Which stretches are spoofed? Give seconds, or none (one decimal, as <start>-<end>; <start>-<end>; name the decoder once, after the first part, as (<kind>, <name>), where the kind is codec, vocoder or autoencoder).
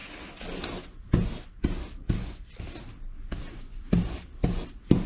none